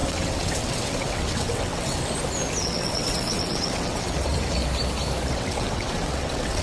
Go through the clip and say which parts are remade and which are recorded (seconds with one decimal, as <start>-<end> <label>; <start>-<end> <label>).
0.0-2.0 remade; 2.0-2.6 recorded; 2.6-4.6 remade; 4.6-5.3 recorded; 5.3-6.6 remade